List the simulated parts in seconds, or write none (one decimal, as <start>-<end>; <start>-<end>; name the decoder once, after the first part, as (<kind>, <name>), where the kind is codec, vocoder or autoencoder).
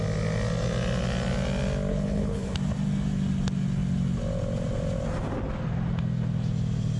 1.9-2.5 (codec, HILCodec)